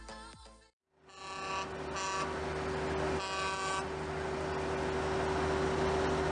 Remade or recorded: recorded